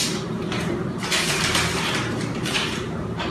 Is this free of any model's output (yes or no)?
no